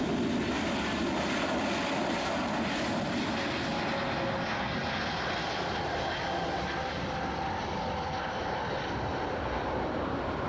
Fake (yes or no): no